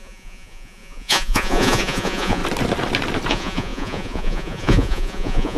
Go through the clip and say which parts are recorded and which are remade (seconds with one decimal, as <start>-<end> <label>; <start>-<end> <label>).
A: 0.0-2.4 remade; 2.4-3.3 recorded; 3.3-5.6 remade